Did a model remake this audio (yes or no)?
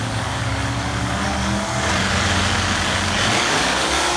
yes